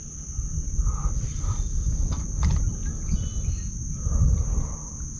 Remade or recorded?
recorded